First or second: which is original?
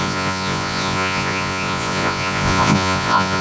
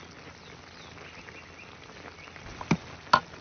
second